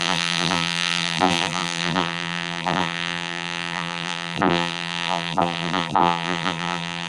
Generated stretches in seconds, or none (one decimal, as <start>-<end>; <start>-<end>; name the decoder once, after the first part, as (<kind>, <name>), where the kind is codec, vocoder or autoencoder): 0.0-7.1 (vocoder, BigVGAN v2)